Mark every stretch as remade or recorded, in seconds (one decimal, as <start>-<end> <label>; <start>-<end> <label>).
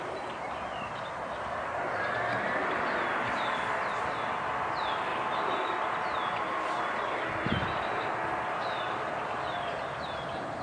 0.0-10.6 recorded